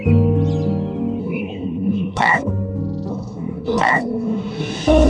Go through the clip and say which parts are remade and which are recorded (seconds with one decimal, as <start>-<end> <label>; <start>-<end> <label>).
0.0-1.2 recorded; 1.2-2.5 remade; 2.5-3.1 recorded; 3.1-5.1 remade